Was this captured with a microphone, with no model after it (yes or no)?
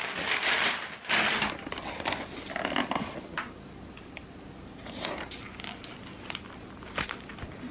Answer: yes